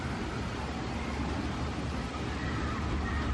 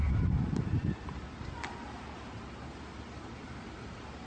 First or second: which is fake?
first